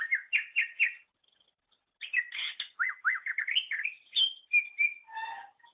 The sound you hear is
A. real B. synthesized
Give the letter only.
A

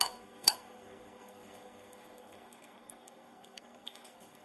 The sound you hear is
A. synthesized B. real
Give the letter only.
A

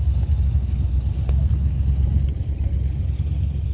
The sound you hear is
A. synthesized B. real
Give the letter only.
B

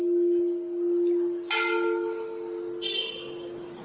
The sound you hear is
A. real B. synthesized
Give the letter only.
A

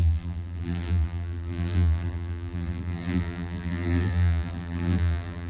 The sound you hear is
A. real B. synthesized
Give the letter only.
B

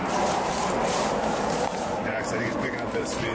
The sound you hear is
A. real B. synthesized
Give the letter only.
B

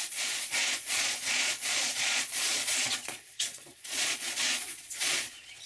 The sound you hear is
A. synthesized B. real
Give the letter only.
A